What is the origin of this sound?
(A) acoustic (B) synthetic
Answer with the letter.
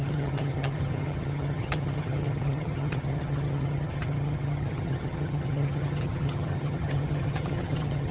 B